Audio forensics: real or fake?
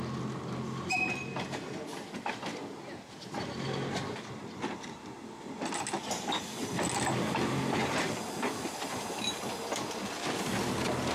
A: real